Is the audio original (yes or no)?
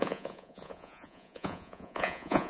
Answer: no